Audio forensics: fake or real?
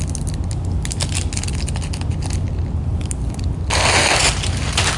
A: real